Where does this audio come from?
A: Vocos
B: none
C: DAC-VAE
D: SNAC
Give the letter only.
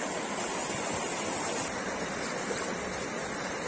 B